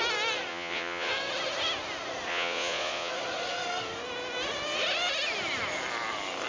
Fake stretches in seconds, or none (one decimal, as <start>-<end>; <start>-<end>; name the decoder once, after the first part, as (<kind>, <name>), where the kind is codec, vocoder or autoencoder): 0.5-1.1 (vocoder, Vocos); 2.3-3.1